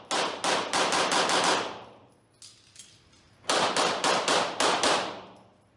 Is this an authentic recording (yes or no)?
yes